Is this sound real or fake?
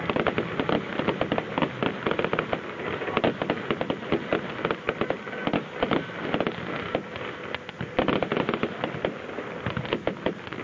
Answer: real